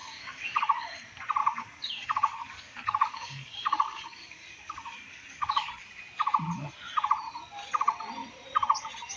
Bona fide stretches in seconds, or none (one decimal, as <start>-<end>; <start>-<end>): 0.9-1.4; 5.7-9.2